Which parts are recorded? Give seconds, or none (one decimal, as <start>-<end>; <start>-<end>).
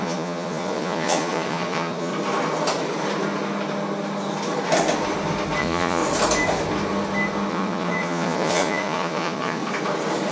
2.1-5.6; 6.0-7.5; 9.6-10.3